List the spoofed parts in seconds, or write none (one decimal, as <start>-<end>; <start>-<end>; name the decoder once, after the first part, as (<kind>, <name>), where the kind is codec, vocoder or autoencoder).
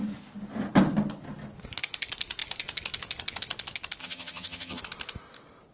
4.0-4.8 (vocoder, HiFi-GAN)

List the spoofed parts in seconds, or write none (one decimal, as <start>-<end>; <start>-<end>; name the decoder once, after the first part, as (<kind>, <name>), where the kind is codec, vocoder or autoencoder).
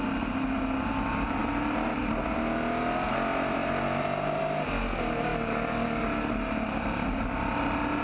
none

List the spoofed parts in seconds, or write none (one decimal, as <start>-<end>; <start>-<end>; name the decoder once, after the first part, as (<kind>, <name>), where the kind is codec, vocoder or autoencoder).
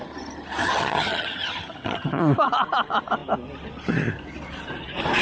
0.6-2.2 (vocoder, HiFi-GAN)